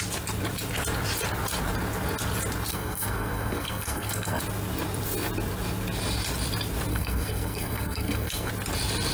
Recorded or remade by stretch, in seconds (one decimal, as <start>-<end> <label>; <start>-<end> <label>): 0.0-2.7 recorded; 2.7-4.4 remade; 4.4-6.9 recorded; 6.9-8.5 remade; 8.5-9.1 recorded